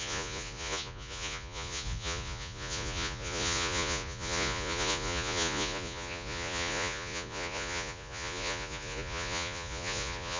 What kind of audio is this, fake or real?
fake